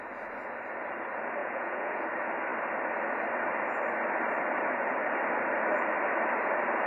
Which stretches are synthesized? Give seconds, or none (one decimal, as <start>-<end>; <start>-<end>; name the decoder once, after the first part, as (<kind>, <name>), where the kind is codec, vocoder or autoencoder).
1.4-2.0 (vocoder, Vocos)